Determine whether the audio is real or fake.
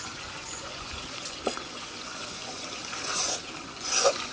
fake